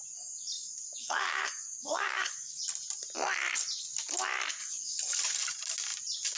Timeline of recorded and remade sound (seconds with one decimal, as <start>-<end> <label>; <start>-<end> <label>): 0.0-1.0 recorded; 1.0-2.6 remade; 2.6-4.6 recorded; 4.6-5.2 remade; 5.2-6.4 recorded